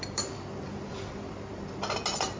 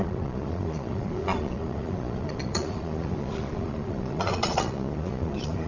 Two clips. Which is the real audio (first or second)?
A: first